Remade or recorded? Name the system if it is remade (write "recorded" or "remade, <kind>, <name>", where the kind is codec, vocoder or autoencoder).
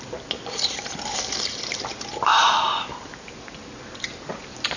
recorded